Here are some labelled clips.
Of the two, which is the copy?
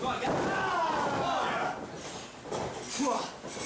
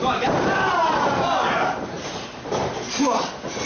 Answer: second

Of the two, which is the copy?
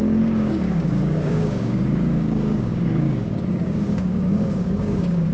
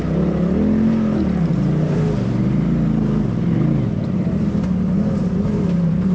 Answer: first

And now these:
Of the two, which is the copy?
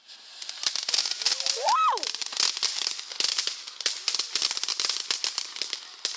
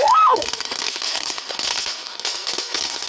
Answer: second